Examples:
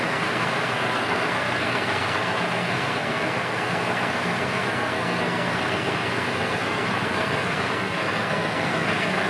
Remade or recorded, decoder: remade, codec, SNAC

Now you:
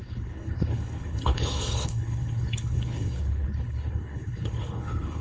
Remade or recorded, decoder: remade, codec, HILCodec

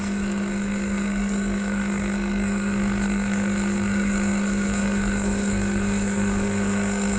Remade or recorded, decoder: remade, codec, SNAC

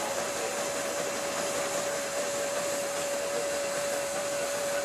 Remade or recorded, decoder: recorded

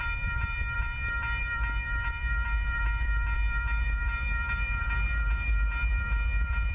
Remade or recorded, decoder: remade, vocoder, BigVGAN v2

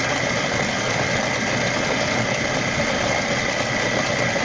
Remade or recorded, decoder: recorded